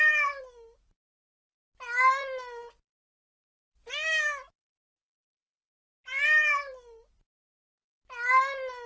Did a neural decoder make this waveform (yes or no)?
no